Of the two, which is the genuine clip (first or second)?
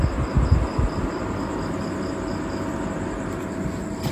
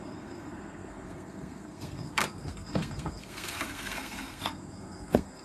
first